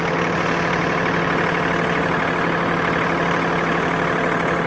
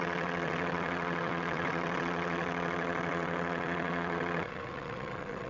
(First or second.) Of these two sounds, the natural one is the first